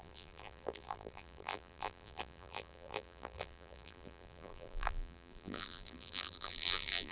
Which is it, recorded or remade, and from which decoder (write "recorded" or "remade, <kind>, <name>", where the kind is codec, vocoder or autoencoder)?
remade, vocoder, BigVGAN v2